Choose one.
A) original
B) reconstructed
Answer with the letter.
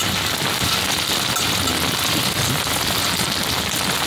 A